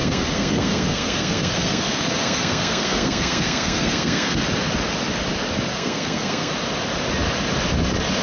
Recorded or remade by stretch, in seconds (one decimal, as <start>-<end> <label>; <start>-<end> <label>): 0.0-4.4 remade; 4.4-5.7 recorded; 5.7-6.5 remade; 6.5-8.2 recorded